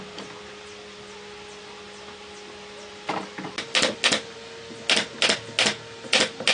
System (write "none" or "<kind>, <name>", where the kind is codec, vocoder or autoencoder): none